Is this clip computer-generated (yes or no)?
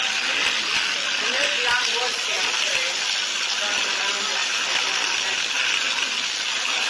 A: no